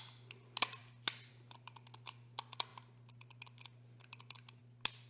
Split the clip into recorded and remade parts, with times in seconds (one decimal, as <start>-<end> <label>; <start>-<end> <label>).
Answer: 0.0-5.1 recorded